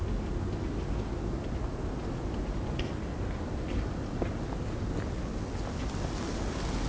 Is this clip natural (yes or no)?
yes